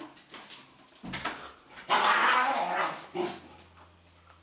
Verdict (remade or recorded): recorded